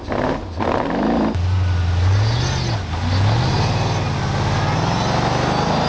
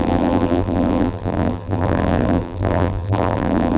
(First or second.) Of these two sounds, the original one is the first